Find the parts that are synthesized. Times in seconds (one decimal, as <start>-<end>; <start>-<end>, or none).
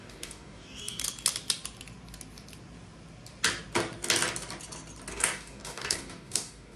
0.0-1.0; 5.1-6.8